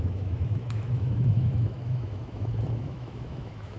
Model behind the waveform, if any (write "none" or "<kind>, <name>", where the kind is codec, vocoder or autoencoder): autoencoder, DAC-VAE